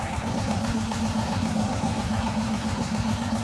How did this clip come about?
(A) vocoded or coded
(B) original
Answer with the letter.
A